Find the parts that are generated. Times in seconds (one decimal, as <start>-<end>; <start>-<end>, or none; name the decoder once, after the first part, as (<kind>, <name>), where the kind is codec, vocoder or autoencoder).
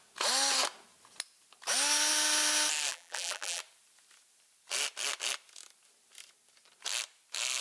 2.9-3.6 (vocoder, BigVGAN v2)